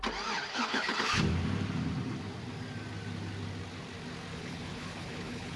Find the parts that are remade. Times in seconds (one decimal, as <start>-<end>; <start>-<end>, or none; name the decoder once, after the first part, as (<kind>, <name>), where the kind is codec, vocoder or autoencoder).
0.5-1.2 (codec, HILCodec); 4.3-5.6